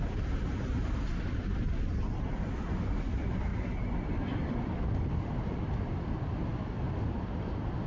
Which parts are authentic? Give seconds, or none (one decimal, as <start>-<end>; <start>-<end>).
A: 3.5-4.5; 6.5-7.9